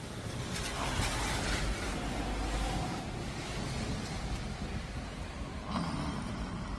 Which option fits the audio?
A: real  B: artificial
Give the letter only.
A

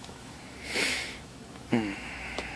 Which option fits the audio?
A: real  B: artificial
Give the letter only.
B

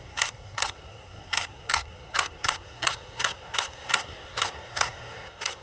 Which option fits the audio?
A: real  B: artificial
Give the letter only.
B